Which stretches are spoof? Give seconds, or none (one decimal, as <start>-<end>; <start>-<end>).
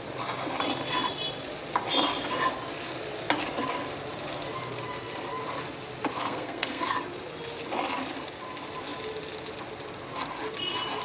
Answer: 6.2-6.8